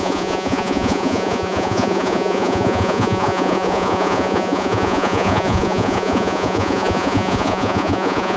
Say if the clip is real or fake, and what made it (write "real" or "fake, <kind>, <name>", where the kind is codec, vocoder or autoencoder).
fake, vocoder, Vocos